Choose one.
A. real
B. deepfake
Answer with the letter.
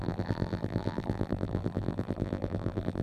B